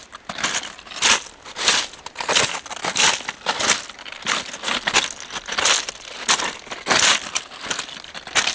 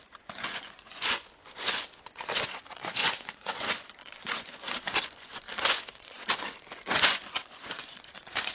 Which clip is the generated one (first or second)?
second